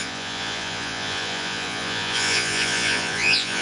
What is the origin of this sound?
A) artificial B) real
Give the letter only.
A